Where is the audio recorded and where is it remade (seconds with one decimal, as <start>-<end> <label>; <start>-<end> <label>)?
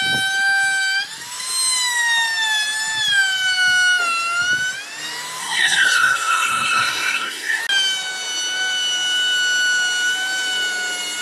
0.0-5.4 recorded; 5.4-7.6 remade; 7.6-11.2 recorded